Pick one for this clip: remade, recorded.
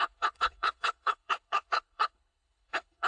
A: remade